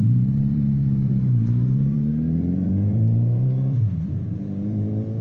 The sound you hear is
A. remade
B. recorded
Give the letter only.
A